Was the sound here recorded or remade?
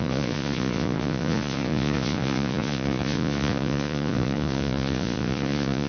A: remade